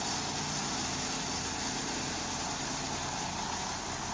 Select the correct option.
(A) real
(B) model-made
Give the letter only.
A